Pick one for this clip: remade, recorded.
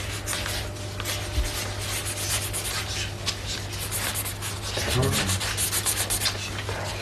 recorded